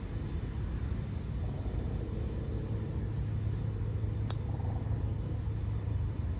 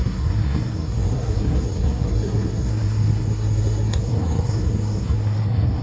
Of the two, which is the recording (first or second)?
first